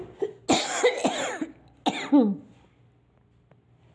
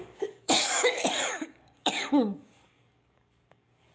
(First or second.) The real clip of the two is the first